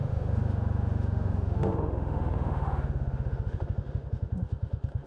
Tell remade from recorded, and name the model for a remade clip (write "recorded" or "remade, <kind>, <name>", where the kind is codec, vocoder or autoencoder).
remade, autoencoder, DAC-VAE